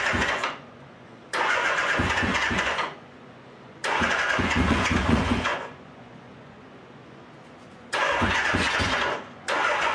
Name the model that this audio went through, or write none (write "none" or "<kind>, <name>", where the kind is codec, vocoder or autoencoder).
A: vocoder, Vocos